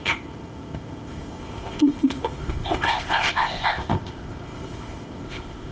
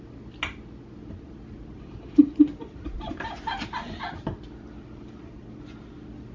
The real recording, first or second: second